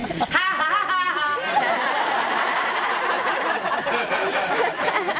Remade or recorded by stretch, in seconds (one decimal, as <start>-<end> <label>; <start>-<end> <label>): 0.0-3.1 remade; 3.1-5.2 recorded